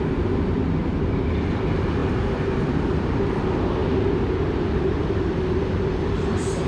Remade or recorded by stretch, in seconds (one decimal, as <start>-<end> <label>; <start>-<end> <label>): 0.0-2.0 recorded; 2.0-3.0 remade; 3.0-6.7 recorded